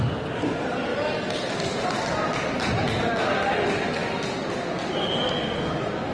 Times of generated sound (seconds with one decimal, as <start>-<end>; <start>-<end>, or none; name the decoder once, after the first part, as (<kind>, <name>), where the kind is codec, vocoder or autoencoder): none